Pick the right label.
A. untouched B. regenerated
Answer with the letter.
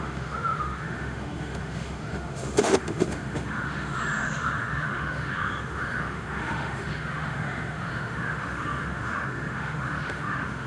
B